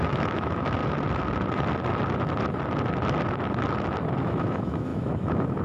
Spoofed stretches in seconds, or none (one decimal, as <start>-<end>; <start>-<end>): 0.0-0.8; 4.2-5.6